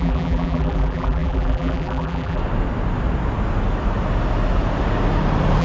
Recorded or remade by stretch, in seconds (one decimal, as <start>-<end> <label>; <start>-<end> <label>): 0.0-2.4 remade; 2.4-5.6 recorded